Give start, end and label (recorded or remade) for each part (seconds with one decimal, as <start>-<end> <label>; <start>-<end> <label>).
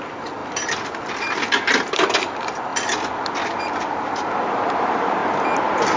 0.0-6.0 recorded